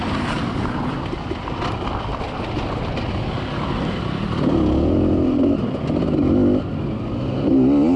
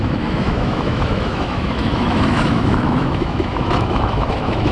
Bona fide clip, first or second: first